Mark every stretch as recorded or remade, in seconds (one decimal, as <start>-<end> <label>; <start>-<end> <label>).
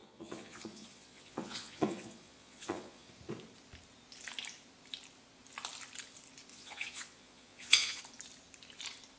0.0-3.1 remade; 3.1-6.5 recorded; 6.5-8.0 remade; 8.0-9.2 recorded